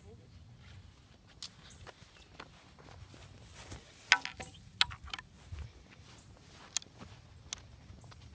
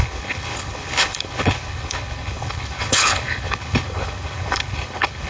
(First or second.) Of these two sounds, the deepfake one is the second